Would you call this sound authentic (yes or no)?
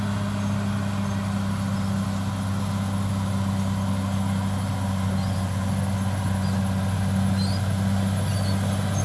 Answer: yes